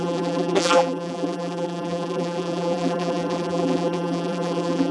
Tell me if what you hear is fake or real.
fake